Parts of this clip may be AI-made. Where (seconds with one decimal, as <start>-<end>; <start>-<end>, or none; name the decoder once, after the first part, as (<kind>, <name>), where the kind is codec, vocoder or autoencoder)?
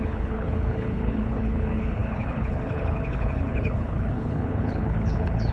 0.0-5.5 (codec, HILCodec)